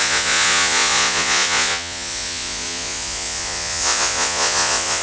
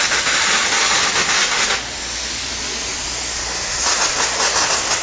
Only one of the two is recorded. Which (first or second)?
second